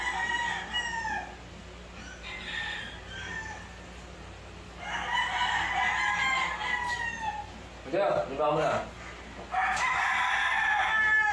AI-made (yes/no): no